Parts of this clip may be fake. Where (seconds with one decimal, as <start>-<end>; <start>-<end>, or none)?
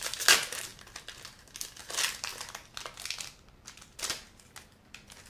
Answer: none